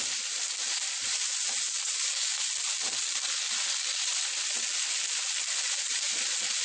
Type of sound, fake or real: real